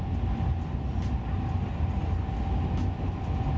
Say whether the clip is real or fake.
real